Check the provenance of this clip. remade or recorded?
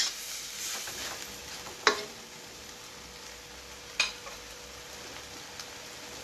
recorded